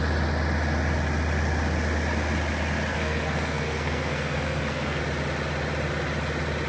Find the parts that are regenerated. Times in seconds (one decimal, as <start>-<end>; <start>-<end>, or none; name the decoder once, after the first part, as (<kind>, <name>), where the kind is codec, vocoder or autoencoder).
2.9-5.0 (codec, SNAC)